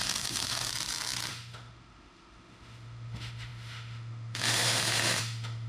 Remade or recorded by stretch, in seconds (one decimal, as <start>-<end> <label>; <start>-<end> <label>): 0.0-0.7 remade; 0.7-1.3 recorded; 1.3-5.7 remade

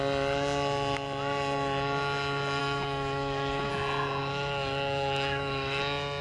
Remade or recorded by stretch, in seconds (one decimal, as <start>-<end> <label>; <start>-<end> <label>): 0.0-2.6 recorded; 2.6-3.7 remade; 3.7-4.2 recorded; 4.2-5.8 remade; 5.8-6.2 recorded

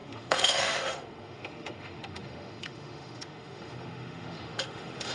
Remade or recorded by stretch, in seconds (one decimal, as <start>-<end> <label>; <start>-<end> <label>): 0.0-5.1 remade

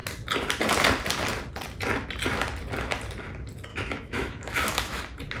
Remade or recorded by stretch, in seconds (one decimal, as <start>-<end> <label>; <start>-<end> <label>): 0.0-3.7 recorded; 3.7-5.0 remade; 5.0-5.4 recorded

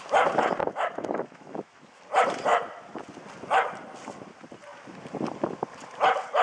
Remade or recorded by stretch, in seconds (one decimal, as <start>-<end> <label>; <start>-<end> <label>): 0.0-0.6 recorded; 0.6-2.0 remade; 2.0-6.4 recorded

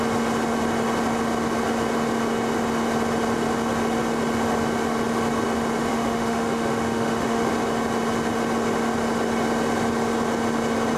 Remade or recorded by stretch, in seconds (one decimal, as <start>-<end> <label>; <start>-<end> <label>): 0.0-5.9 recorded; 5.9-7.5 remade; 7.5-11.0 recorded

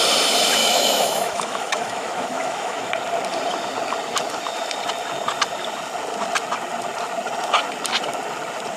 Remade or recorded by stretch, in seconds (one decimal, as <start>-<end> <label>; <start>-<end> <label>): 0.0-0.6 recorded; 0.6-2.9 remade; 2.9-8.8 recorded

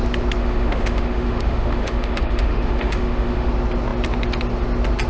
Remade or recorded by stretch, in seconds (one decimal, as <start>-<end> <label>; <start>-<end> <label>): 0.0-0.4 recorded; 0.4-3.5 remade; 3.5-5.1 recorded